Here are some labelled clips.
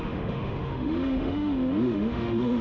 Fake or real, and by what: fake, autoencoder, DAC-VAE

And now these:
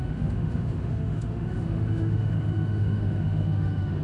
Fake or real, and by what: fake, autoencoder, DAC-VAE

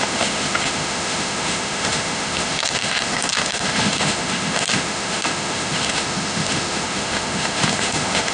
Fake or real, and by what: fake, autoencoder, DAC-VAE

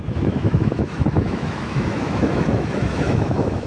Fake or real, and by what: fake, autoencoder, DAC-VAE